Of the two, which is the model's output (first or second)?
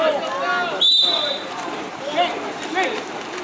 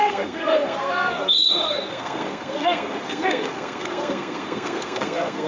second